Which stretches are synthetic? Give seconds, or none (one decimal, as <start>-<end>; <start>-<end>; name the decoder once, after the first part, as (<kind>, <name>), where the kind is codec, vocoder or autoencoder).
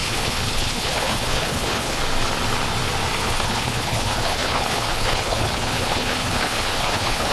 0.0-2.0 (codec, HILCodec); 3.2-7.3